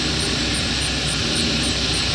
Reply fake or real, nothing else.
fake